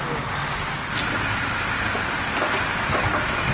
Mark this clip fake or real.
real